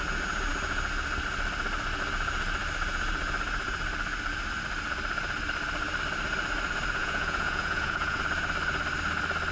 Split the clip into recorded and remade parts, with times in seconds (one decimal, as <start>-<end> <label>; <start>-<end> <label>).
0.0-7.0 recorded; 7.0-8.2 remade; 8.2-9.5 recorded